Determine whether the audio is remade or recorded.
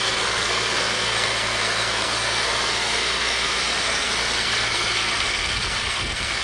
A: remade